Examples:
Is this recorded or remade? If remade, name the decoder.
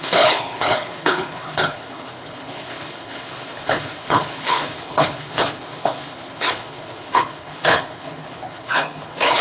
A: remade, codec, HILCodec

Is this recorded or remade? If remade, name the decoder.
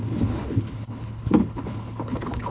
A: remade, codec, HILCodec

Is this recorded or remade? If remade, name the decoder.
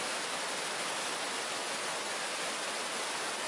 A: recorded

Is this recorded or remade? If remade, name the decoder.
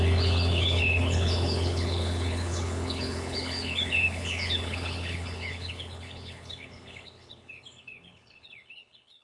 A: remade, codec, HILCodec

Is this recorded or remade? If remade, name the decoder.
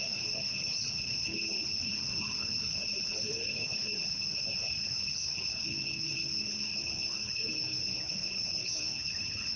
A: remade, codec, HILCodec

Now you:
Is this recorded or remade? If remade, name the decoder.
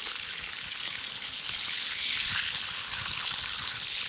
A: remade, codec, HILCodec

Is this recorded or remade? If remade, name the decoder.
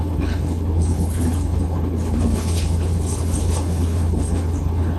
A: remade, codec, HILCodec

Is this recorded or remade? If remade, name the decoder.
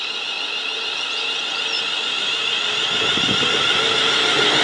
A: recorded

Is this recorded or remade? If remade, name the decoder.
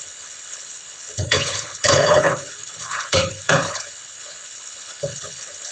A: remade, codec, HILCodec